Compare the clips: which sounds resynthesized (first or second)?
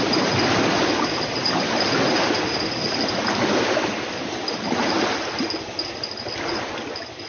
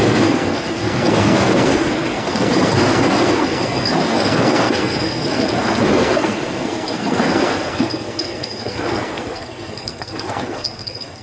second